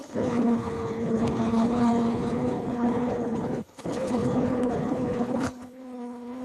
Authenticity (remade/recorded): remade